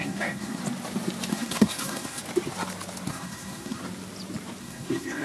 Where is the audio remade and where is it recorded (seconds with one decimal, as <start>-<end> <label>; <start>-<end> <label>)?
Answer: 0.0-0.6 remade; 0.6-1.3 recorded; 1.3-2.2 remade; 2.2-3.1 recorded; 3.1-3.8 remade; 3.8-4.6 recorded; 4.6-5.2 remade